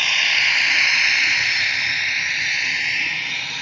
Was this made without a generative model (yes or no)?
yes